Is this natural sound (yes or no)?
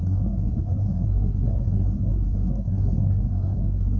no